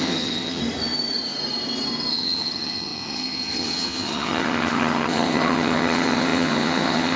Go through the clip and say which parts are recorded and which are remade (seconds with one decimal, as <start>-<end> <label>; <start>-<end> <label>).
0.0-0.6 remade; 0.6-2.1 recorded; 2.1-7.2 remade